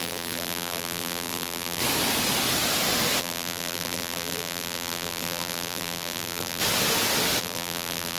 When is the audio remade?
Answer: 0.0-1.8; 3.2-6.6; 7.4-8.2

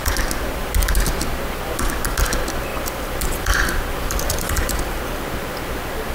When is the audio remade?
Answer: 2.7-5.2

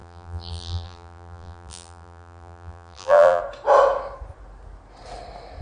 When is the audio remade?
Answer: 0.0-3.4

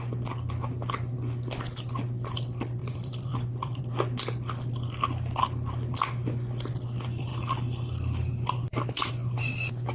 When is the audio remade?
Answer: 2.8-3.8

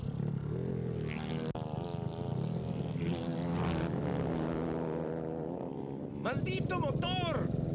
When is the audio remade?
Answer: none

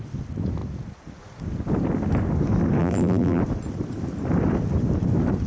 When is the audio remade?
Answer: 2.8-3.4